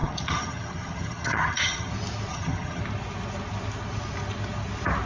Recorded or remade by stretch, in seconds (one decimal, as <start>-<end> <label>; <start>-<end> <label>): 0.0-1.9 remade; 1.9-2.3 recorded; 2.3-2.8 remade; 2.8-5.1 recorded

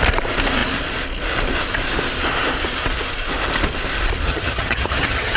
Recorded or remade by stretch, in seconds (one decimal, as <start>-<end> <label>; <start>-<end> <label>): 0.0-4.3 recorded; 4.3-5.4 remade